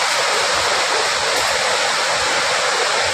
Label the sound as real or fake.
real